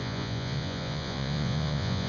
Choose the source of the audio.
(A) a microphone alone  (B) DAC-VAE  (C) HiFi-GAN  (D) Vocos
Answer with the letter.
D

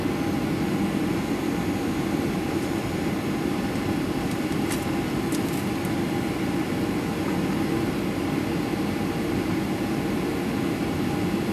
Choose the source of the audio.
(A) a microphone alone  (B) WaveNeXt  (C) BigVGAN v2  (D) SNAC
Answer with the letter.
A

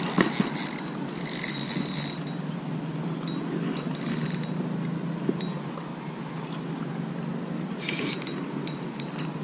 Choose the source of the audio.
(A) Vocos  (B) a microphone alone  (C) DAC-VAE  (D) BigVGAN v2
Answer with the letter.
B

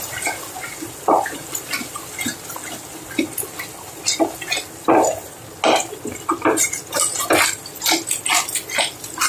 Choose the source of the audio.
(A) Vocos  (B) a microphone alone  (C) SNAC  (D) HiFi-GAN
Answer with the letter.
B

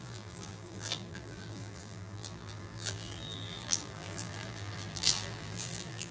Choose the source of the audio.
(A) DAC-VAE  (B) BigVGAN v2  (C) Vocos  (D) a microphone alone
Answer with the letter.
B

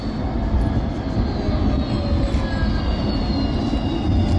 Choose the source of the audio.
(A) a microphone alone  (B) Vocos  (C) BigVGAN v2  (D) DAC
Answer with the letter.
A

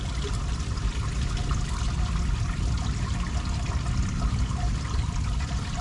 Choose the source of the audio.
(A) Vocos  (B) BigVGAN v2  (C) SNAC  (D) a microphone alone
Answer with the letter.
D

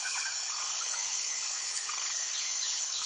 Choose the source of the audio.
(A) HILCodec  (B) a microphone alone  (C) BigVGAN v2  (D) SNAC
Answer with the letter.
A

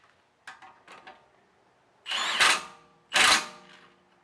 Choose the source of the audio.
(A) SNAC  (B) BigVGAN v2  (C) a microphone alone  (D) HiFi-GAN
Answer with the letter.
C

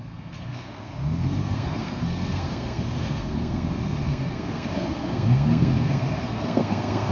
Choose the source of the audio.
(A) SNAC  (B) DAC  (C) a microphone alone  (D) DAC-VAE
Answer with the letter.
A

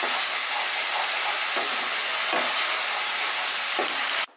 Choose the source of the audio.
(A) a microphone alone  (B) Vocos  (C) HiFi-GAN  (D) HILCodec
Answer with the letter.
A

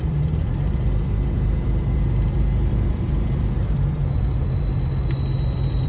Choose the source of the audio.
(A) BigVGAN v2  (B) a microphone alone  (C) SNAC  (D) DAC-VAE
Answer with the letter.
A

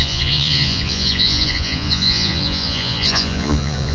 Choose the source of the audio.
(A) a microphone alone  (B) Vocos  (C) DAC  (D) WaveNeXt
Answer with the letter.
B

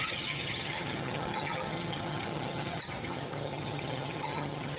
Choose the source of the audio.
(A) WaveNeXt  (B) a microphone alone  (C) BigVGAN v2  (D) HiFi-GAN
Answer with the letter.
D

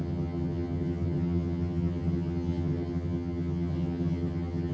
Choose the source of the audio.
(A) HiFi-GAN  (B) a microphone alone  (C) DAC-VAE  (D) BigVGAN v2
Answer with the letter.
A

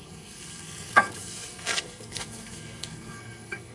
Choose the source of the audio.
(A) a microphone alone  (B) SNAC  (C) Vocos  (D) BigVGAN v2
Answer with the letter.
B